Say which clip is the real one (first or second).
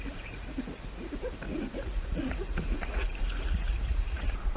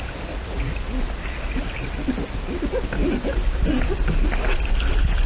second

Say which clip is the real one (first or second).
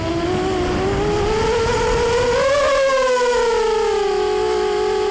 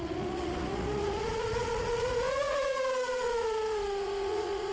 first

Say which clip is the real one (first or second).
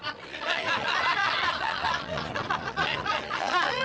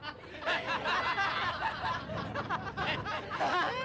second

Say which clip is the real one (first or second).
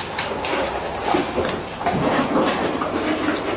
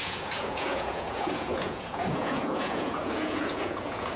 first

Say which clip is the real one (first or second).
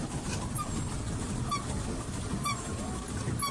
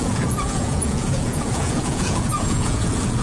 first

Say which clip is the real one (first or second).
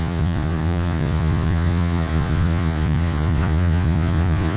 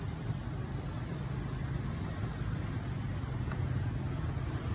second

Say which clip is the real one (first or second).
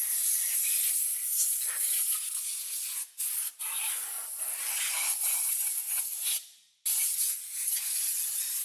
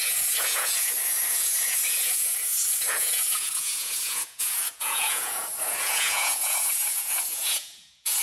first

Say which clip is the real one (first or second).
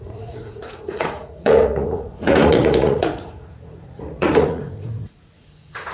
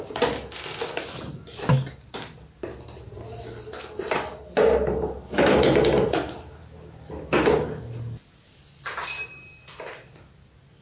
second